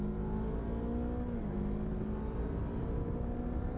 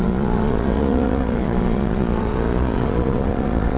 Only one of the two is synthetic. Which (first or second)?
second